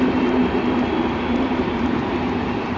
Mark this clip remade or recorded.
remade